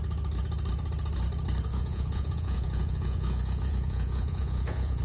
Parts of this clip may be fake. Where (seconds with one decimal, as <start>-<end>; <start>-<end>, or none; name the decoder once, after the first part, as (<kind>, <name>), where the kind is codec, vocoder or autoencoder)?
1.7-5.0 (vocoder, Vocos)